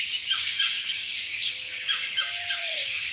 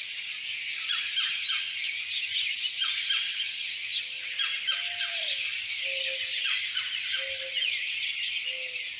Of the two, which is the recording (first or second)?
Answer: second